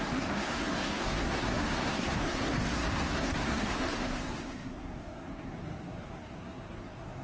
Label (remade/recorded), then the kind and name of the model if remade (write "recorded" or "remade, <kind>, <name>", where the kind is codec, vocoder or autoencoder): remade, codec, SNAC